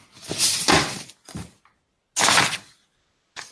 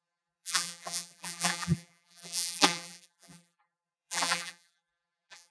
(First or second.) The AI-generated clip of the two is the second